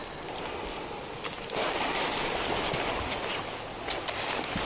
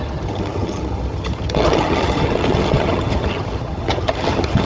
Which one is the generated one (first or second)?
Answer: second